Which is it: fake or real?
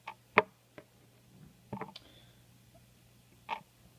real